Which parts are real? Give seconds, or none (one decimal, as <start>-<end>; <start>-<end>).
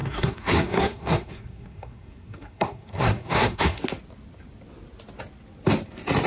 3.8-6.3